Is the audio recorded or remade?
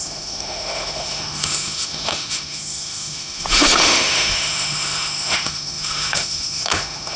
remade